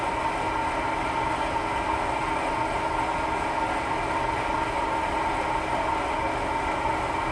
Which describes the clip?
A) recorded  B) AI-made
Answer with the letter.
A